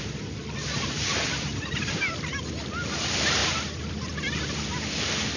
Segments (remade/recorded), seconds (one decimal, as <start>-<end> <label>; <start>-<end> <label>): 0.0-1.1 recorded; 1.1-1.9 remade; 1.9-3.4 recorded; 3.4-5.0 remade; 5.0-5.4 recorded